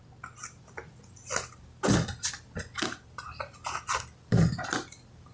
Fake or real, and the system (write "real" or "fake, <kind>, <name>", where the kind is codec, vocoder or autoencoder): real